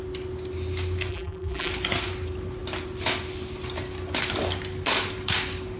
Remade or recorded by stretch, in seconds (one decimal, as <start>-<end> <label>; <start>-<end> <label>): 0.0-1.1 recorded; 1.1-1.7 remade; 1.7-5.8 recorded